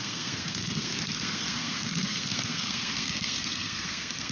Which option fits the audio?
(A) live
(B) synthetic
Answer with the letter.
B